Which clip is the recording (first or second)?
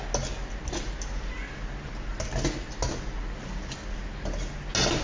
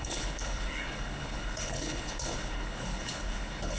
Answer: first